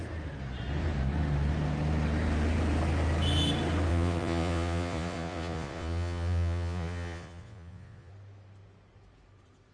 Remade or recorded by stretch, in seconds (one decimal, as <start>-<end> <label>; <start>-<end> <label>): 0.0-3.9 recorded; 3.9-8.1 remade; 8.1-9.7 recorded